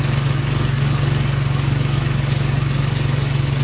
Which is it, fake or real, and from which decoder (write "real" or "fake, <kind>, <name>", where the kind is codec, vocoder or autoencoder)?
fake, codec, DAC